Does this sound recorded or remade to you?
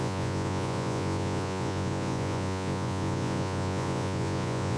remade